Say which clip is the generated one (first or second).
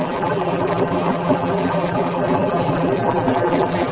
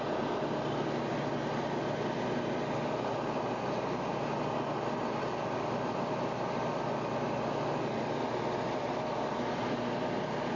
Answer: first